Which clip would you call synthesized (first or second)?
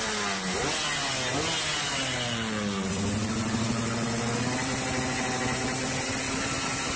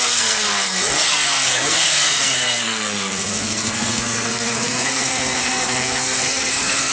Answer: second